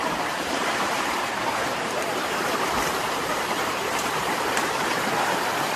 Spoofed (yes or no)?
yes